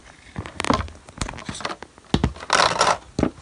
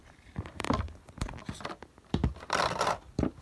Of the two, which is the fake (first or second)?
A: second